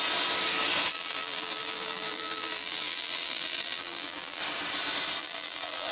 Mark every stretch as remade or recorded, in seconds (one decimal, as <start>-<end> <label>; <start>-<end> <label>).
0.0-0.9 recorded; 0.9-4.4 remade; 4.4-5.2 recorded; 5.2-5.9 remade